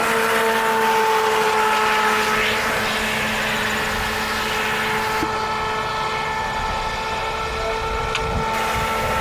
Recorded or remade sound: recorded